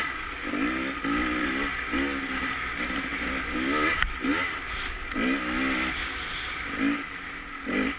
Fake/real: real